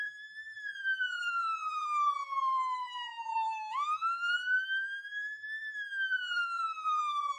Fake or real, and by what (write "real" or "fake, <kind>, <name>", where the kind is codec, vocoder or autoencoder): fake, vocoder, BigVGAN v2